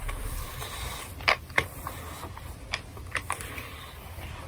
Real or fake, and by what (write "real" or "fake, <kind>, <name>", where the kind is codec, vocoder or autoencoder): fake, vocoder, BigVGAN v2